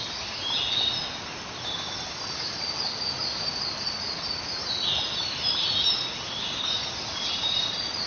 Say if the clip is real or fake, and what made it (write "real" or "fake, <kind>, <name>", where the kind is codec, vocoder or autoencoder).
real